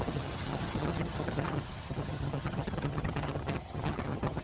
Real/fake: fake